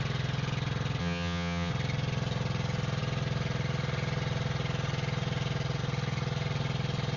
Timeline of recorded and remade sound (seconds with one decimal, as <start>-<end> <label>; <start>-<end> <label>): 0.0-1.0 recorded; 1.0-1.7 remade; 1.7-7.2 recorded